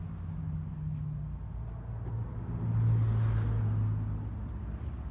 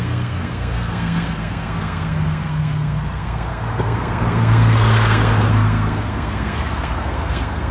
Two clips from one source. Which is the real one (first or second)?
first